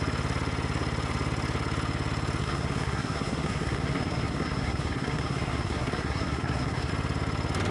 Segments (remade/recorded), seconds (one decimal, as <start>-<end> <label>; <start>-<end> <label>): 0.0-2.4 recorded; 2.4-6.9 remade; 6.9-7.7 recorded